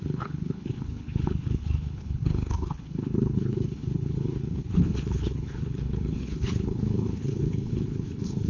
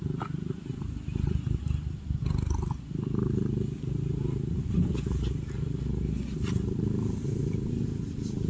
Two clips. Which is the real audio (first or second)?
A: second